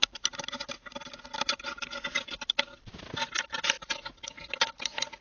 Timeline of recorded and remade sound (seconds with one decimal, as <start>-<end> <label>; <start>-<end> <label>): 0.0-5.2 recorded